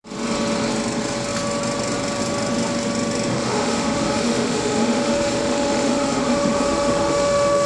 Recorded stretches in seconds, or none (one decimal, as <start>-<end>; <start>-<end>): 0.0-3.3